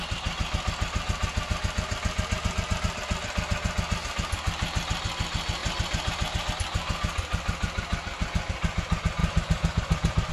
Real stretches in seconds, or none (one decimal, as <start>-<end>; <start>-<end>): 0.0-5.6; 6.5-9.2